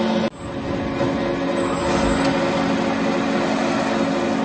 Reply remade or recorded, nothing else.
recorded